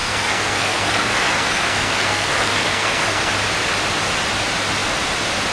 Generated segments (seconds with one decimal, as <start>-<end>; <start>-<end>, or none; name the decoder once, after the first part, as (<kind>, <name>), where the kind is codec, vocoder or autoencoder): 0.0-3.3 (codec, SNAC)